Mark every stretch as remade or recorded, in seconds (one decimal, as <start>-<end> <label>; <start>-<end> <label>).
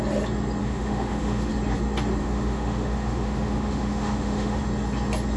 0.0-0.6 recorded; 0.6-1.5 remade; 1.5-2.2 recorded; 2.2-4.6 remade; 4.6-5.4 recorded